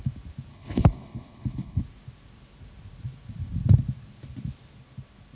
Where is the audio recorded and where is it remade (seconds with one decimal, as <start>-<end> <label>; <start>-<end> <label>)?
0.0-0.5 recorded; 0.5-1.8 remade; 1.8-5.3 recorded